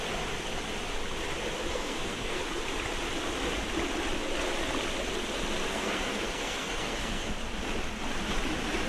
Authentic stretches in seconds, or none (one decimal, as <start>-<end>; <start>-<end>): 0.0-1.7; 2.4-5.7; 7.3-8.9